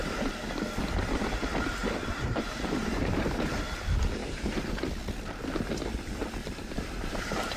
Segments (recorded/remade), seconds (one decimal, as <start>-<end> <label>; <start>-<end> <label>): 0.0-1.8 recorded; 1.8-3.6 remade; 3.6-4.2 recorded; 4.2-4.7 remade; 4.7-6.4 recorded; 6.4-7.6 remade